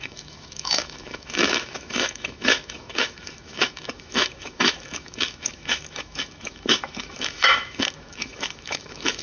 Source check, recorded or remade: remade